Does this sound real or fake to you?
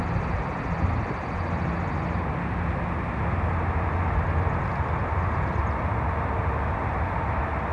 real